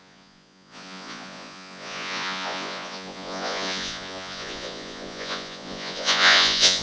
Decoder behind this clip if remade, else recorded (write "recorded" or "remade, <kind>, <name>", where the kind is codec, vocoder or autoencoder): remade, vocoder, Vocos